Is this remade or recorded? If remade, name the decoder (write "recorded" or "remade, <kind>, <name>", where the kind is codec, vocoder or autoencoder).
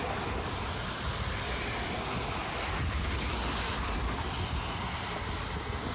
recorded